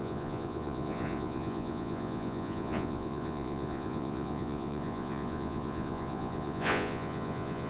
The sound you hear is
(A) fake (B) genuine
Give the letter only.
A